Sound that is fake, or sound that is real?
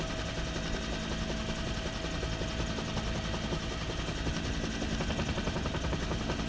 real